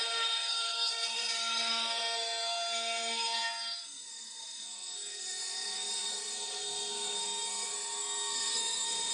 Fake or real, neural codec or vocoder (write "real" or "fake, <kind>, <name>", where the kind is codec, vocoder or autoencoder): fake, codec, SNAC